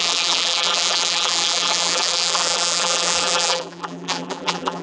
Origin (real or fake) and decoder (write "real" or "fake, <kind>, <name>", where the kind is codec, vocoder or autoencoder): fake, vocoder, BigVGAN v2